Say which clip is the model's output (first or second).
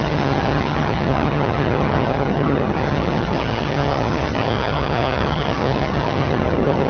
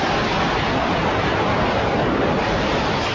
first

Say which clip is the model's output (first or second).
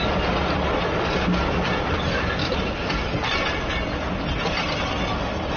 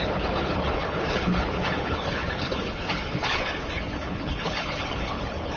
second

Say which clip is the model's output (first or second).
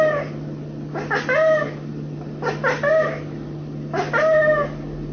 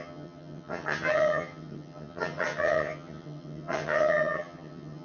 second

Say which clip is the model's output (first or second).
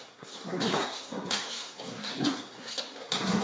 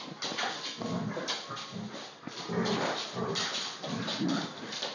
first